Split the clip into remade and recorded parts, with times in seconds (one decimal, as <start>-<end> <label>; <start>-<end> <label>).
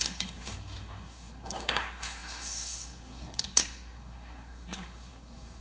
0.0-5.6 remade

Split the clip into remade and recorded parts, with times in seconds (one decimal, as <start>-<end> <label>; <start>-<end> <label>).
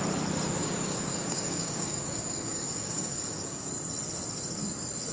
0.0-0.6 recorded; 0.6-3.7 remade; 3.7-5.1 recorded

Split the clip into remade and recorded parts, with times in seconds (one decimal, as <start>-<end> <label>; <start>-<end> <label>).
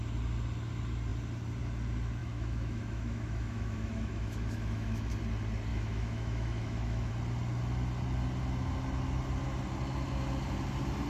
0.0-2.2 recorded; 2.2-5.1 remade; 5.1-5.7 recorded; 5.7-7.1 remade; 7.1-11.1 recorded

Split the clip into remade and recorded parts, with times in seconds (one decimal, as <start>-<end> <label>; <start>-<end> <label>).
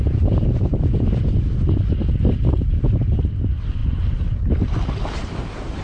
0.0-5.8 recorded